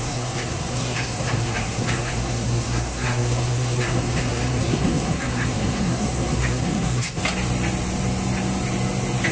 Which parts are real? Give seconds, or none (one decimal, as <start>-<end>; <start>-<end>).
7.2-9.3